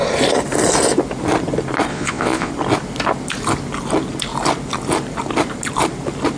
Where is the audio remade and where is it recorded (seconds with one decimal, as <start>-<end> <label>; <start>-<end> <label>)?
0.0-1.9 recorded; 1.9-2.5 remade; 2.5-6.4 recorded